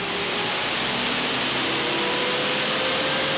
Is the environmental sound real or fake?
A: real